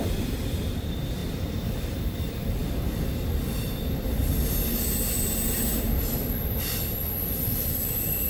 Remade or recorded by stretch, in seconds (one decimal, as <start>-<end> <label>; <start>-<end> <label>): 0.0-1.2 remade; 1.2-1.7 recorded; 1.7-2.6 remade; 2.6-7.1 recorded; 7.1-8.3 remade